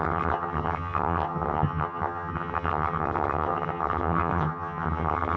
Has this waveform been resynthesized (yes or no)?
yes